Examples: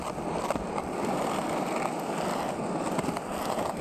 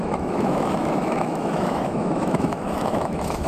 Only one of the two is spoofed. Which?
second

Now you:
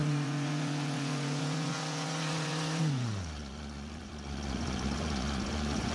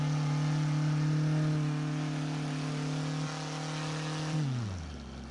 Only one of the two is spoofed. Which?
first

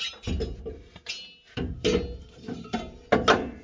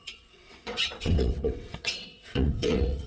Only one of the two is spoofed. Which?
second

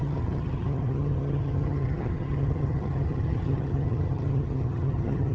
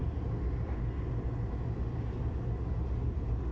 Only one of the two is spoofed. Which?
first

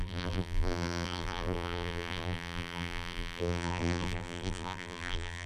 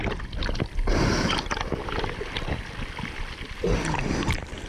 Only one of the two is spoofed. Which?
first